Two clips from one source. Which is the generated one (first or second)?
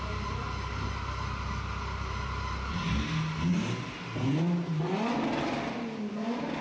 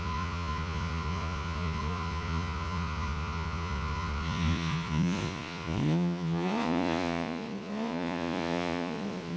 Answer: second